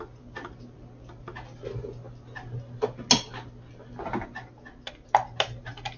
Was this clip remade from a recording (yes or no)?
no